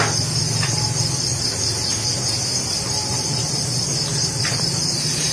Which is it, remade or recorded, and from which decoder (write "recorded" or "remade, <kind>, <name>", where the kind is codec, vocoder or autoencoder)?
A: recorded